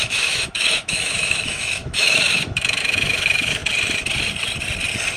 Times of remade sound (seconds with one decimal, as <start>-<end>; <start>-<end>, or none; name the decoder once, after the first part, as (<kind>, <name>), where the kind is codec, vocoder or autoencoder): 0.0-3.6 (autoencoder, DAC-VAE)